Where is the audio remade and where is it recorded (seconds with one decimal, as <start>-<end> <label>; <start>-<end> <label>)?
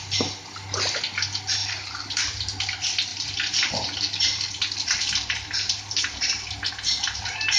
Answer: 0.0-1.6 recorded; 1.6-2.4 remade; 2.4-3.1 recorded; 3.1-6.7 remade; 6.7-7.6 recorded